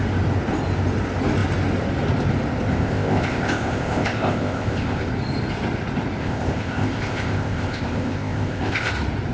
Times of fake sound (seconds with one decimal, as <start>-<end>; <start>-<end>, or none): 2.7-5.1; 6.2-8.9